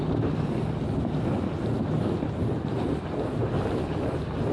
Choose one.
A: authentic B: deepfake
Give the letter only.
A